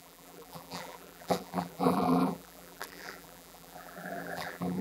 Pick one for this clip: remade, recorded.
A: remade